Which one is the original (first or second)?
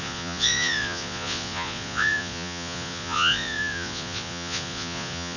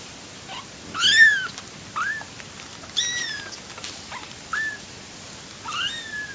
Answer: second